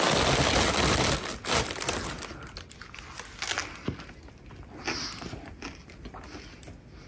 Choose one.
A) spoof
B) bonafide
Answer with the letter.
B